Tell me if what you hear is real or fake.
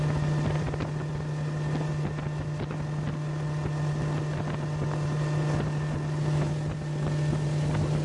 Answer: real